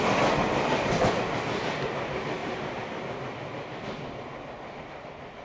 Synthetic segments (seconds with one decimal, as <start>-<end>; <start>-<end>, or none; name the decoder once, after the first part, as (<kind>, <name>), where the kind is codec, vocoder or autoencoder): none